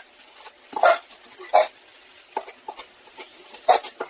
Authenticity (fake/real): real